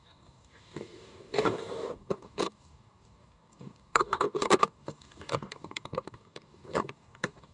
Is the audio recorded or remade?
remade